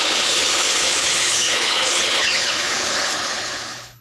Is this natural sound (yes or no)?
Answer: no